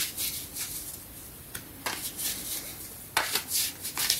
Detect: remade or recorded recorded